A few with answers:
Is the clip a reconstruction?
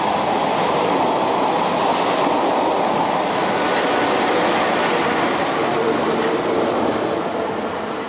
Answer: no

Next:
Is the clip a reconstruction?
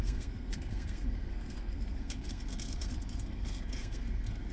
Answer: yes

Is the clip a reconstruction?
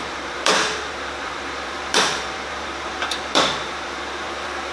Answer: yes